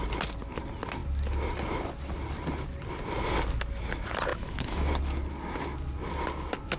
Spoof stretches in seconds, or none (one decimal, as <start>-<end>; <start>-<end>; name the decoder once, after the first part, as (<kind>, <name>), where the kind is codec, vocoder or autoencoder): 4.3-4.9 (autoencoder, DAC-VAE)